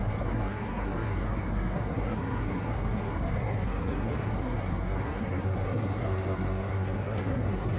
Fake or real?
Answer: fake